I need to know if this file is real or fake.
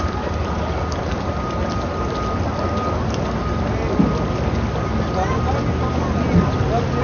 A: real